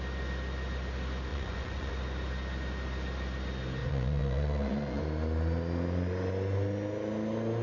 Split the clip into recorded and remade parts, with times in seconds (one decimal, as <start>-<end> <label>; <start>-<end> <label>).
0.0-1.3 recorded; 1.3-1.9 remade; 1.9-3.8 recorded; 3.8-5.0 remade; 5.0-7.6 recorded